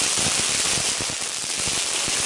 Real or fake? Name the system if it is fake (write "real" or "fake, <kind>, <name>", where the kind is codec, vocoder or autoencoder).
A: real